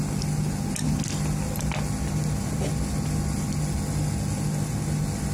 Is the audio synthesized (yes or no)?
no